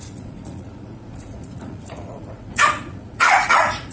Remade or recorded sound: remade